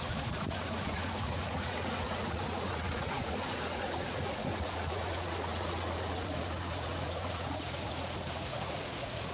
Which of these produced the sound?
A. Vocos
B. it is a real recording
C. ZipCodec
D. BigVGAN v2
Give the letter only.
A